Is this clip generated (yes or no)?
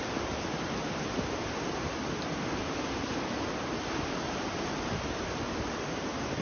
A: no